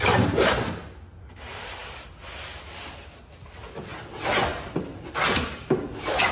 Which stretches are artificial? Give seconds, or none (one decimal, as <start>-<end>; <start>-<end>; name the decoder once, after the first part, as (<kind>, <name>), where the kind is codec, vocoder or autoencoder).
4.5-6.3 (vocoder, BigVGAN v2)